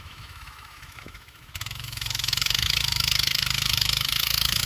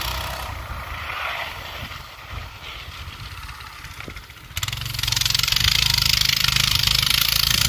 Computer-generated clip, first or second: first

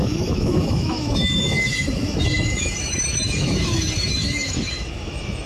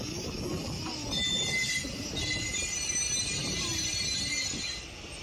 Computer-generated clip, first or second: first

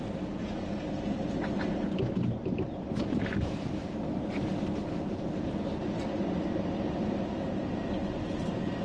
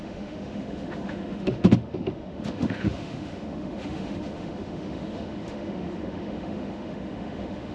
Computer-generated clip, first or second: second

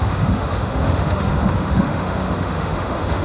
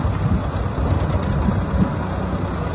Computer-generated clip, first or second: first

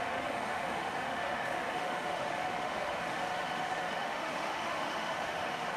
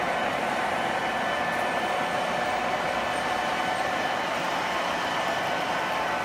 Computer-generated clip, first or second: first